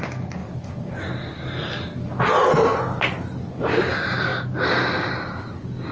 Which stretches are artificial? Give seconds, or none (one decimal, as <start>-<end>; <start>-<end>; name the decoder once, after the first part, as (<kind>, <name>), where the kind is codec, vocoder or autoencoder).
none